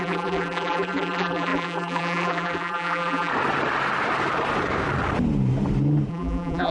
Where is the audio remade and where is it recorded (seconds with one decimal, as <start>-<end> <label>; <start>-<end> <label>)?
0.0-3.3 remade; 3.3-6.1 recorded; 6.1-6.7 remade